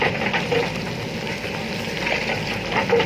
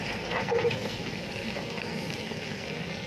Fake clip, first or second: second